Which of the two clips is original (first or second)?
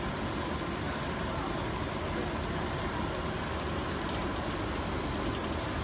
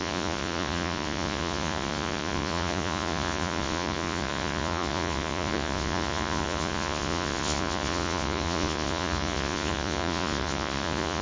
first